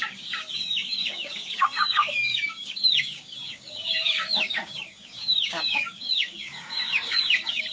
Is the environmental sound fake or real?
fake